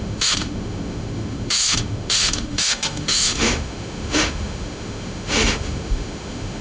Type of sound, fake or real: fake